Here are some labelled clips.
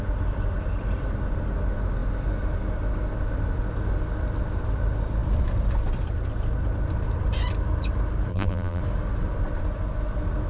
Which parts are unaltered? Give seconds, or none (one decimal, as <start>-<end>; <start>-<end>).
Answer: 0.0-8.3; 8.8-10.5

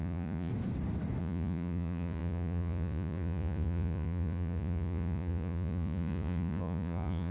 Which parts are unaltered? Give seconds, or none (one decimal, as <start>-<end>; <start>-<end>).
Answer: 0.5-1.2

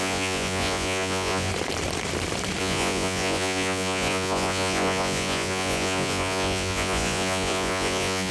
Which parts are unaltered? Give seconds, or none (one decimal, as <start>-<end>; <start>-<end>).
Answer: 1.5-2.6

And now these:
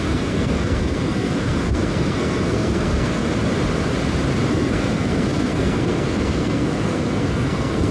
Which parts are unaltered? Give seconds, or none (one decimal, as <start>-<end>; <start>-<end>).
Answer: 3.2-4.5